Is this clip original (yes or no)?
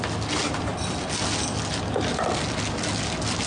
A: yes